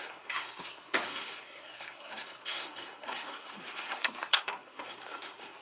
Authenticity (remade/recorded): remade